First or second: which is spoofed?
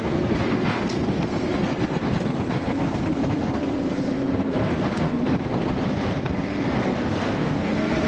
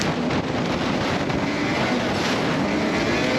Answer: first